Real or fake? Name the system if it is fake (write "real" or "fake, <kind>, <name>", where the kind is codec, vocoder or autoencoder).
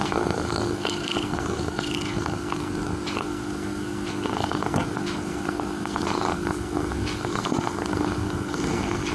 fake, codec, SNAC